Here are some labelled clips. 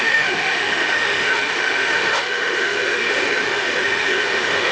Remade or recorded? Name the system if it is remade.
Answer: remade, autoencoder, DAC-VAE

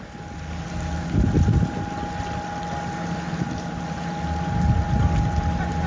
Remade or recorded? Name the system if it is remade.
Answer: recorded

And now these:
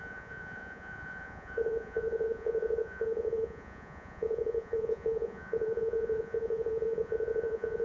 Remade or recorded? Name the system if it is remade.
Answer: remade, vocoder, Vocos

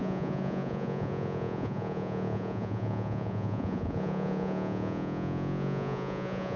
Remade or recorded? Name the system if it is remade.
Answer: remade, vocoder, Vocos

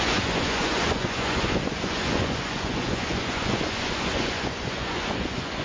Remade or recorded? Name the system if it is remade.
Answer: remade, vocoder, Vocos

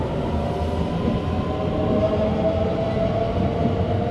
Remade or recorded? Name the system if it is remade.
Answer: recorded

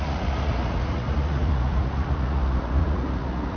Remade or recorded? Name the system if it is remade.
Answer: remade, vocoder, Vocos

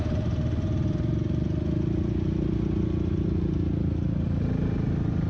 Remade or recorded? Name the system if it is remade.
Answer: recorded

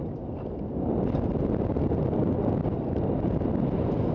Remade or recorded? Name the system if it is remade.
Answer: recorded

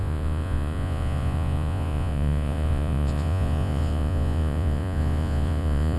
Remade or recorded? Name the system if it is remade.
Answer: remade, vocoder, Vocos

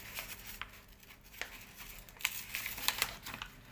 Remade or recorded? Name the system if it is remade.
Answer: recorded